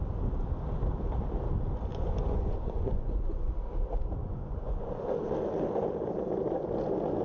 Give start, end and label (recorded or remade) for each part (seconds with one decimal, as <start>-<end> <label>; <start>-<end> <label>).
0.0-1.9 recorded; 1.9-3.5 remade; 3.5-4.2 recorded; 4.2-4.9 remade; 4.9-7.2 recorded